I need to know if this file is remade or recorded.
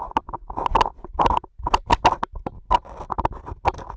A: recorded